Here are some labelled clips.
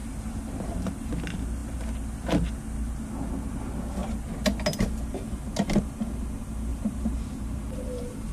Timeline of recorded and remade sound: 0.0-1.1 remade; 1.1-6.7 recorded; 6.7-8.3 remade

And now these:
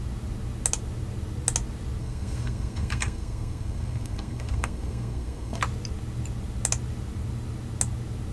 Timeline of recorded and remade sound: 0.0-2.0 recorded; 2.0-5.6 remade; 5.6-8.3 recorded

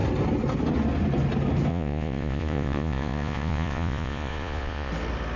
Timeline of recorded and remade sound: 0.0-1.7 recorded; 1.7-4.9 remade; 4.9-5.4 recorded

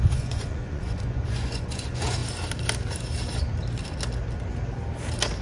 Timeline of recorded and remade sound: 0.0-2.2 remade; 2.2-5.4 recorded

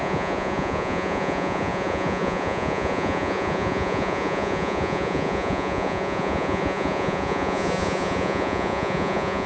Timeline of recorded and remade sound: 0.0-9.5 remade